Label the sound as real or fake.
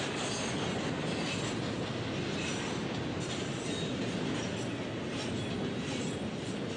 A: real